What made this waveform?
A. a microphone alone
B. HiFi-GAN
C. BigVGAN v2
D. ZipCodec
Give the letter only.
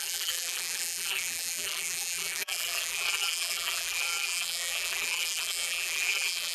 C